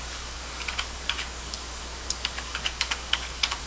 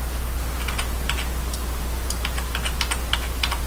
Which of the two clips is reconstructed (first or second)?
first